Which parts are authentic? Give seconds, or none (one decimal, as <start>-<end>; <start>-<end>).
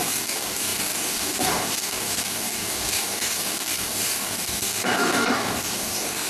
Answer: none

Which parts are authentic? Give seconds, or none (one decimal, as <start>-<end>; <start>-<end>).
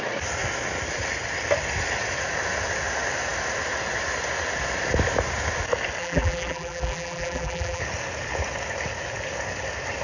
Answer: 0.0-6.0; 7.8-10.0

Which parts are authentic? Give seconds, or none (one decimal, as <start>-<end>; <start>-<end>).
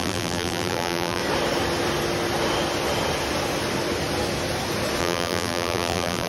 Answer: 1.2-5.0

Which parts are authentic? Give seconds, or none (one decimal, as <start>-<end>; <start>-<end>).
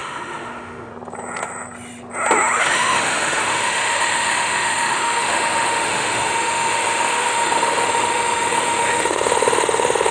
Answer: 0.9-2.6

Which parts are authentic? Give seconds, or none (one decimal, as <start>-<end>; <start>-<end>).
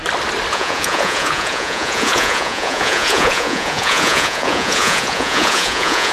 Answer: 0.0-0.5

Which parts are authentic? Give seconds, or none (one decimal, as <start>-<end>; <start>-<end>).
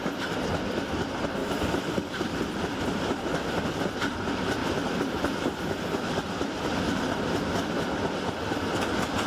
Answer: 0.0-9.3